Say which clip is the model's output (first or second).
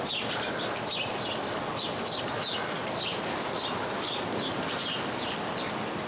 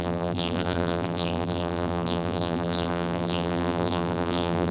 second